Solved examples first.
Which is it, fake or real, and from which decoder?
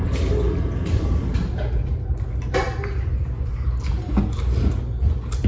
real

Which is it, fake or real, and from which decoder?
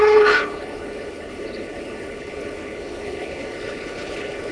fake, codec, HILCodec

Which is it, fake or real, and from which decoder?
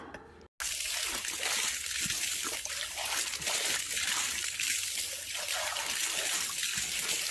real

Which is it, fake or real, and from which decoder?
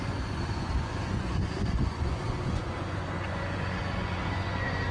fake, vocoder, Vocos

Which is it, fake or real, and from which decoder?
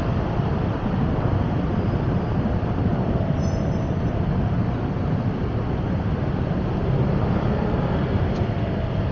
real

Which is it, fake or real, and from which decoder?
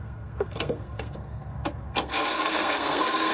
fake, codec, SNAC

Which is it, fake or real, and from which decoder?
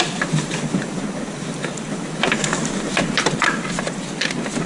real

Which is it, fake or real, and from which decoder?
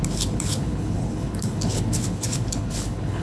fake, codec, HILCodec